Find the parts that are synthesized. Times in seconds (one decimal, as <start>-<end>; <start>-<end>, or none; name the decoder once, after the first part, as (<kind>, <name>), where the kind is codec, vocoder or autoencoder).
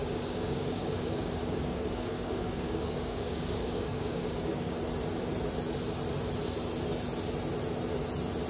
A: 0.0-4.8 (codec, DAC)